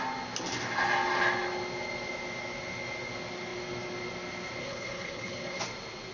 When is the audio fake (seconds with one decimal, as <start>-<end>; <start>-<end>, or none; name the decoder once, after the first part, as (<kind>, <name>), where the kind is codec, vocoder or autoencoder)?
4.6-5.6 (codec, HILCodec)